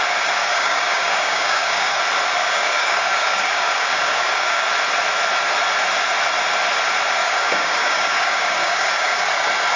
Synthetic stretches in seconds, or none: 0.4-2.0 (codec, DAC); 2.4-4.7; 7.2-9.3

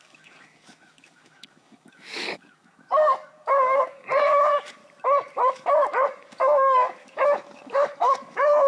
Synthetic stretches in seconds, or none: 0.0-4.8 (codec, DAC); 5.5-8.7

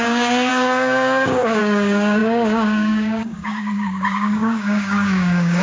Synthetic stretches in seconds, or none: 0.0-5.6 (codec, DAC)